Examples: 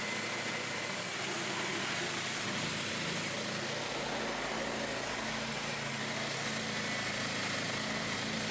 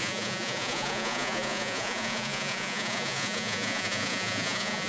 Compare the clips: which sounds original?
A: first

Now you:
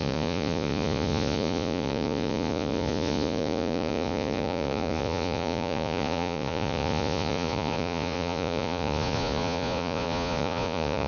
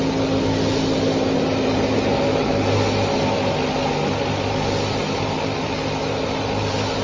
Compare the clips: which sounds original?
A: second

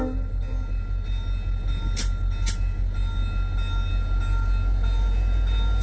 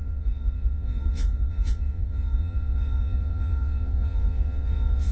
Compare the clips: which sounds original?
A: first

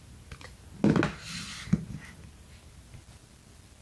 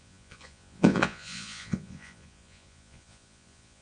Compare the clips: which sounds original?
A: first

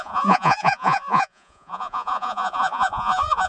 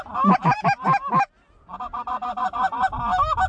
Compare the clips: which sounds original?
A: second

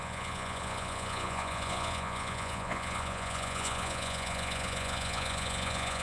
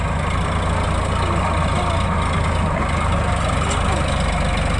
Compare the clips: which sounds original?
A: second